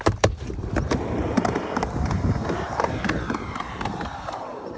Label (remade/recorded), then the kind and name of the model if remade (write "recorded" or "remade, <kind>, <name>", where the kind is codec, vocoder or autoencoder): remade, vocoder, BigVGAN v2